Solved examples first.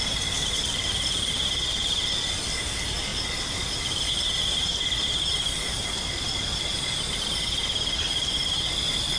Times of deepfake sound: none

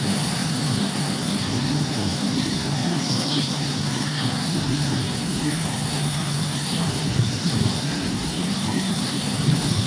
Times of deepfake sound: 0.0-9.9 (codec, SNAC)

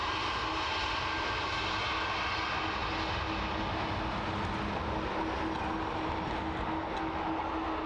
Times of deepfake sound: none

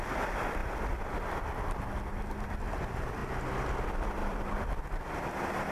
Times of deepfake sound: 4.2-4.8 (vocoder, BigVGAN v2)

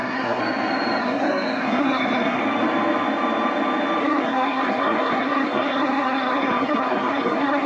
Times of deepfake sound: 0.0-0.4 (codec, SNAC); 1.0-2.4; 4.0-7.7